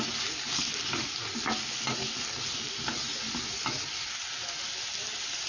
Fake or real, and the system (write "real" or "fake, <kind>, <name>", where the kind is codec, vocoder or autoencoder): real